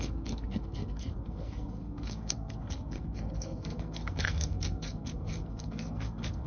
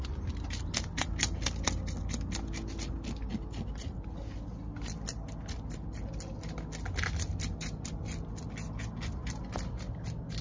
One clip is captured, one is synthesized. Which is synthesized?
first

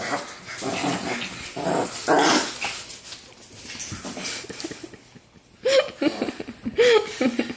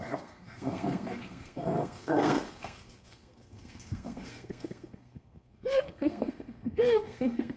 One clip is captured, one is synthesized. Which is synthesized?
second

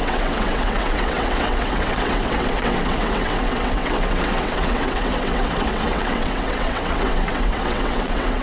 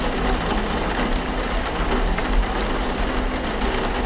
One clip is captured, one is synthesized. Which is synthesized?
first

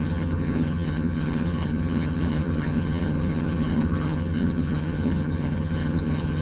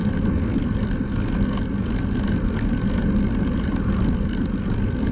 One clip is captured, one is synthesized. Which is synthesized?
first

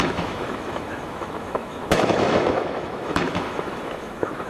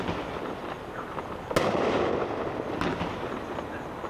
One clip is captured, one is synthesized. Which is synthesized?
first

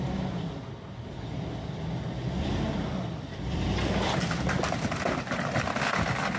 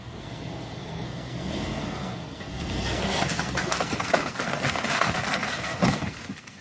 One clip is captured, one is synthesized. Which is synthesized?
second